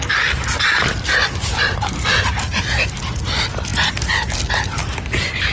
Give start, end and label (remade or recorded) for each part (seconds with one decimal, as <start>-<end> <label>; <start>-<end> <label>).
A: 0.0-1.1 recorded; 1.1-1.9 remade; 1.9-2.5 recorded; 2.5-3.0 remade; 3.0-4.8 recorded; 4.8-5.5 remade